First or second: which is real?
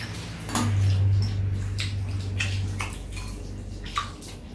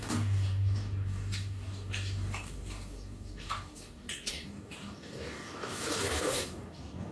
first